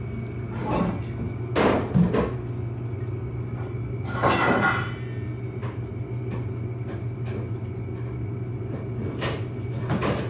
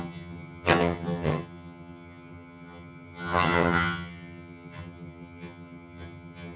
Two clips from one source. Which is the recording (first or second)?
first